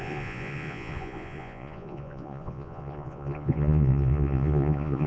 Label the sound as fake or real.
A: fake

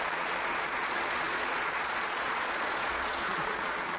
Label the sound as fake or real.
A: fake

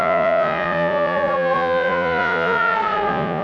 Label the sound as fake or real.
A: fake